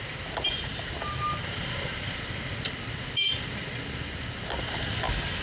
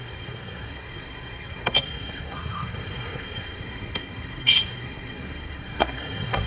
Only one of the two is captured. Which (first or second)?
first